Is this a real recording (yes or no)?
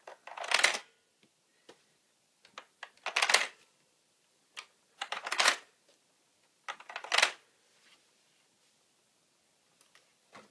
yes